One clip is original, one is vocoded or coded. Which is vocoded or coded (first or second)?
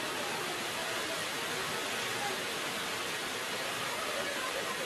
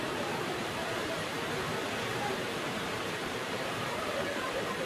second